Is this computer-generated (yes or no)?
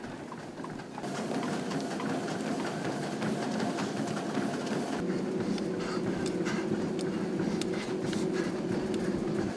no